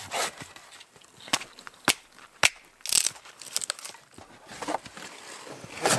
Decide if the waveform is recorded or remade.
recorded